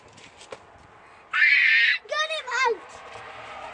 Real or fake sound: real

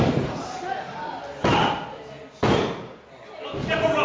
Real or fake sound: real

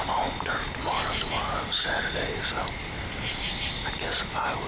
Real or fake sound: real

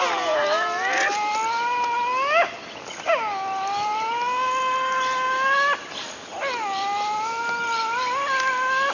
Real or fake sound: real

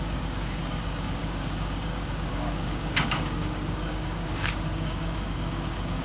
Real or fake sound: fake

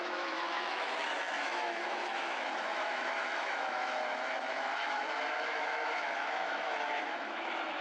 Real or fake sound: fake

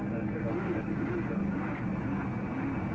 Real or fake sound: real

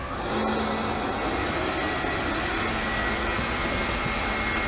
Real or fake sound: real